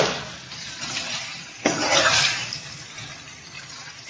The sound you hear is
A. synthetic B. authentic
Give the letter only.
A